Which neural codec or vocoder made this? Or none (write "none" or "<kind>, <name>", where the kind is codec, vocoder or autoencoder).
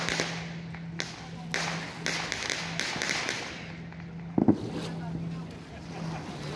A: none